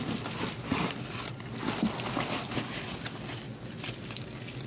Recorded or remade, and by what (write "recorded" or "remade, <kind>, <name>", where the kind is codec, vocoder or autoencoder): recorded